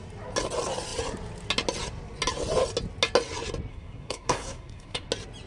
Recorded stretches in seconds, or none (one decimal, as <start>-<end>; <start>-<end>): 0.0-3.7; 5.1-5.5